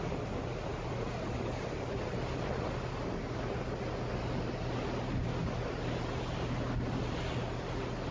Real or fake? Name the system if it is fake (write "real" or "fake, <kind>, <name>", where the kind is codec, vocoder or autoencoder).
real